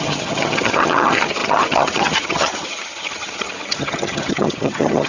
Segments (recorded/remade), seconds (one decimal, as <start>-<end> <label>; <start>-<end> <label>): 0.0-5.1 remade